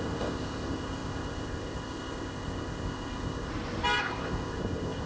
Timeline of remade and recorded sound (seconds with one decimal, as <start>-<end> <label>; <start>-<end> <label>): 0.0-3.5 remade; 3.5-4.0 recorded; 4.0-5.1 remade

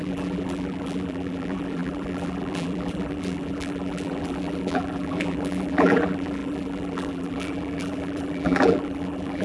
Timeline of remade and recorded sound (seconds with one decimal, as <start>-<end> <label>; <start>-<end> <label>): 0.0-9.4 remade